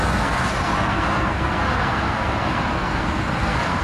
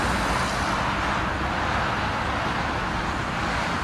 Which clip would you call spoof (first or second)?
first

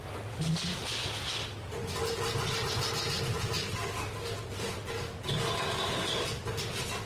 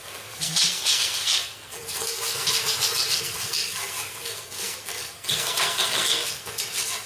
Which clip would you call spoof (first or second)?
second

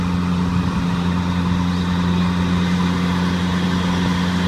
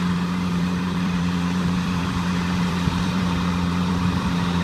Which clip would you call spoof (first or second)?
second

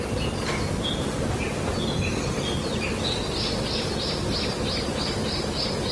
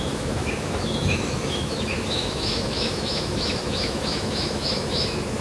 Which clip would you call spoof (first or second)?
second